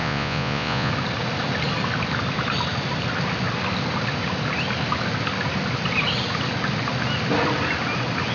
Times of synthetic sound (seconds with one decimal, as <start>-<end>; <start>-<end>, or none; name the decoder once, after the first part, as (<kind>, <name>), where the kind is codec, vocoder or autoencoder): 0.0-0.9 (vocoder, Vocos)